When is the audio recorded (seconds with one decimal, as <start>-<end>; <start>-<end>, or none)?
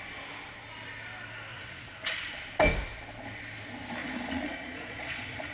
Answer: 0.0-1.5; 2.4-4.0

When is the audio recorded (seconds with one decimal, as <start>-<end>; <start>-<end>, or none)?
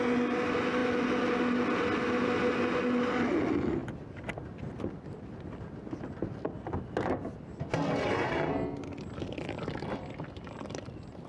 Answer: 0.0-11.3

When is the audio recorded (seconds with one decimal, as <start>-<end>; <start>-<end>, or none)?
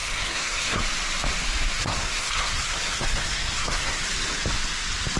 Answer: 0.8-1.8; 4.0-5.2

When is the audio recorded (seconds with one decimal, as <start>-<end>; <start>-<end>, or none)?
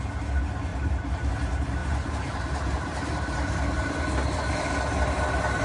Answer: 0.0-0.7; 1.3-1.8; 4.0-5.6